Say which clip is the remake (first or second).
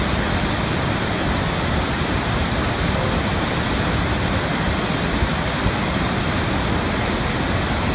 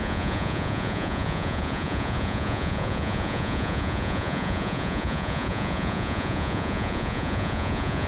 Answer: second